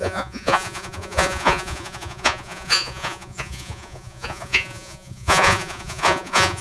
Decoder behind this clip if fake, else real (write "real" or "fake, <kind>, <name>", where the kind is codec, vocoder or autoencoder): fake, vocoder, Vocos